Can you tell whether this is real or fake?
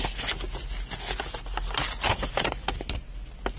real